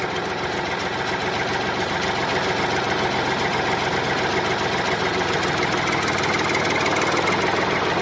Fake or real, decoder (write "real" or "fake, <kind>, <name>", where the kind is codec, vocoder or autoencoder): real